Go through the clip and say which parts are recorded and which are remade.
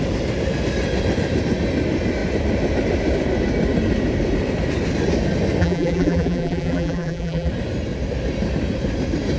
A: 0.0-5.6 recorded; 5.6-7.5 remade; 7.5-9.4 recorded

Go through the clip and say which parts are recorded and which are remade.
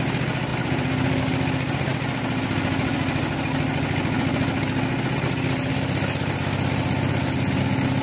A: 0.0-0.5 recorded; 0.5-1.2 remade; 1.2-8.0 recorded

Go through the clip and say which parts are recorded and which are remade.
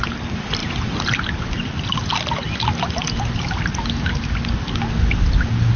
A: 0.0-5.8 recorded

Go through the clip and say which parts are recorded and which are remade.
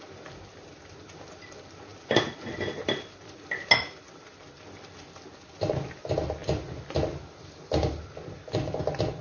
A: 0.0-9.2 recorded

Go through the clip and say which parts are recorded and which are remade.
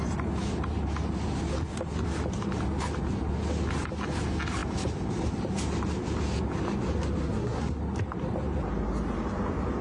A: 0.0-7.2 recorded; 7.2-7.8 remade; 7.8-9.8 recorded